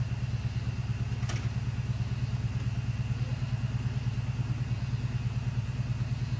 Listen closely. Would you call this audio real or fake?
real